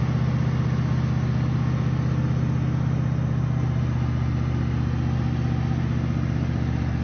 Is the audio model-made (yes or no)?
no